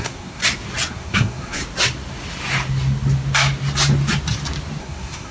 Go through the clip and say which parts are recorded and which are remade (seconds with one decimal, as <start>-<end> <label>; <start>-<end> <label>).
0.0-0.4 remade; 0.4-0.9 recorded; 0.9-1.6 remade; 1.6-4.8 recorded; 4.8-5.3 remade